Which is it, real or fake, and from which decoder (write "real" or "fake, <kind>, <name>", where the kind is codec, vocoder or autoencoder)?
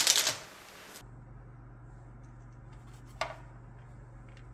real